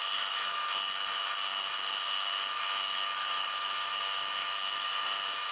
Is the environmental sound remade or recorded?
remade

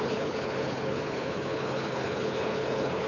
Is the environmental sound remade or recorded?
remade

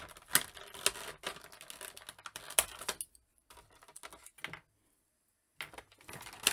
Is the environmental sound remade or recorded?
recorded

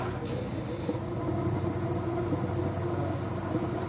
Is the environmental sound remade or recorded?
recorded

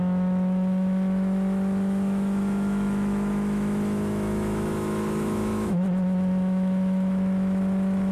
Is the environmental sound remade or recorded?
remade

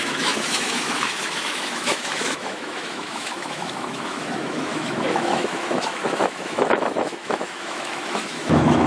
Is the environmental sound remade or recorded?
remade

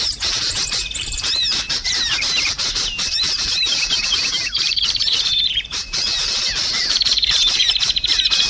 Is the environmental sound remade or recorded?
remade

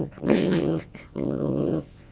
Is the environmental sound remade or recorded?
remade